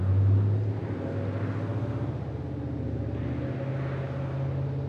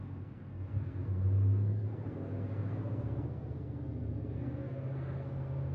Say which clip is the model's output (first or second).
second